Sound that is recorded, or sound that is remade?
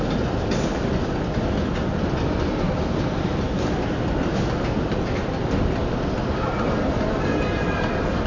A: recorded